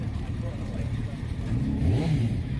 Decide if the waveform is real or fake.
fake